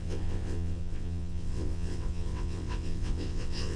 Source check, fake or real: fake